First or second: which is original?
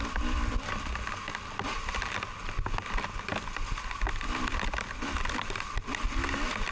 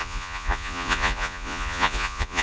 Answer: first